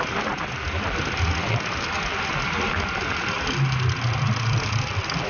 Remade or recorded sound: recorded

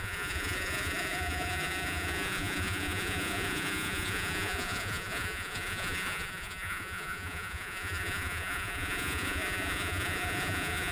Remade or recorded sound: remade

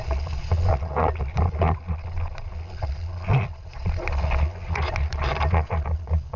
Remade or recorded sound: remade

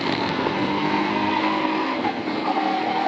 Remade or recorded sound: remade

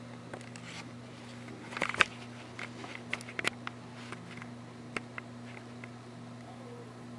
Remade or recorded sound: recorded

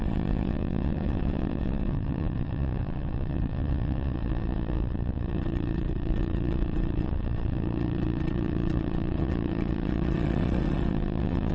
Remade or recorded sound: remade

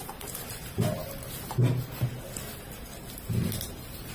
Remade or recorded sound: recorded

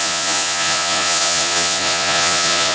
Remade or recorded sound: remade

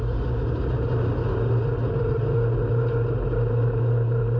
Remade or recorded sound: recorded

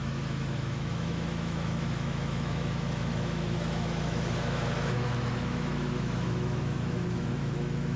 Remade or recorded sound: remade